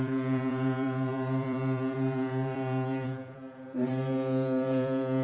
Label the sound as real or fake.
fake